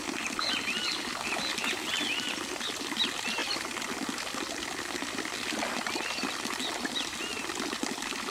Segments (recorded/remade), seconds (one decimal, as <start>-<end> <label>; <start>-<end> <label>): 0.0-8.3 recorded